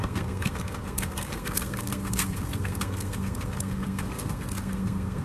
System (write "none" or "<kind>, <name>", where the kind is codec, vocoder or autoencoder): codec, SNAC